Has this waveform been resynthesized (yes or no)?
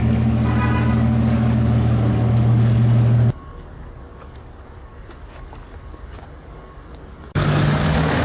yes